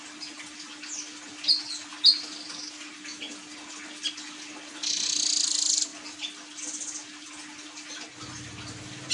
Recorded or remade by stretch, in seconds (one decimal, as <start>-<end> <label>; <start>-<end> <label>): 0.0-9.1 recorded